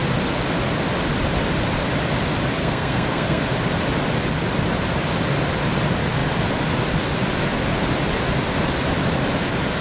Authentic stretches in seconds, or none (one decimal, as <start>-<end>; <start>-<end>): 0.0-2.6; 3.4-9.8